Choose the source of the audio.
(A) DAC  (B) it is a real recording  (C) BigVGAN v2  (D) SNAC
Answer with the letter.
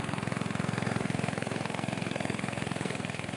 D